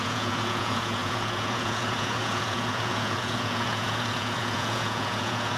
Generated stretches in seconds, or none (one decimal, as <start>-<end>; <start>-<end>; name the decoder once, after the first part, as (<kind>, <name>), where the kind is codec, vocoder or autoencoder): 0.0-5.6 (vocoder, Vocos)